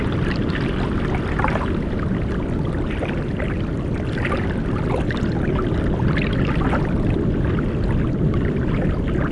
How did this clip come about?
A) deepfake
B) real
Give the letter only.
B